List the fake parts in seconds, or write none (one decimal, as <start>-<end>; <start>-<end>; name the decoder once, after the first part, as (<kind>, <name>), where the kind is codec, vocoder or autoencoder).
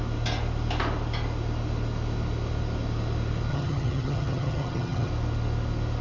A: 3.5-5.1 (vocoder, HiFi-GAN)